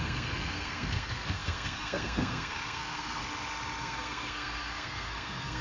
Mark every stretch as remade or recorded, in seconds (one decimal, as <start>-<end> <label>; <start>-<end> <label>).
0.0-3.2 remade; 3.2-3.8 recorded; 3.8-5.6 remade